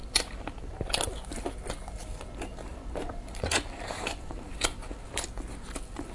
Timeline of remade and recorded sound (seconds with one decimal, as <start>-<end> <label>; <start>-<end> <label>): 0.0-0.7 remade; 0.7-2.7 recorded; 2.7-4.6 remade; 4.6-6.1 recorded